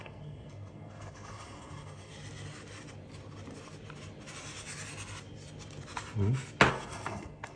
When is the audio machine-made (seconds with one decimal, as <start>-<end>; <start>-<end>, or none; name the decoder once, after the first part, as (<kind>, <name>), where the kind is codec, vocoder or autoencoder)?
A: 0.0-2.1 (codec, SNAC); 6.7-7.6